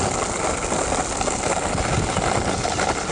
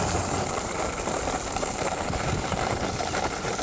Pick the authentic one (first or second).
first